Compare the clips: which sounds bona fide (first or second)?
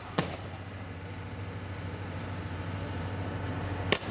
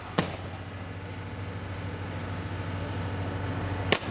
second